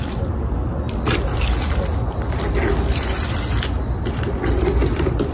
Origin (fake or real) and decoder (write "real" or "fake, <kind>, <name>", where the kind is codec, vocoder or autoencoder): real